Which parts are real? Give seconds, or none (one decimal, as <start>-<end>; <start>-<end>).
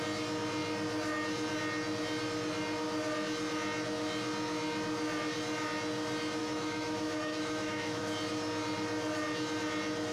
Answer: 0.0-6.4; 8.0-10.1